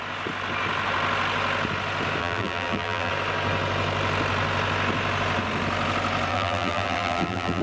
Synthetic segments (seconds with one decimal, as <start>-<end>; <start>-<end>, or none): 2.2-3.1; 6.3-7.6